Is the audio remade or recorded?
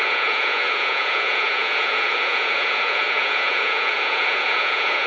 remade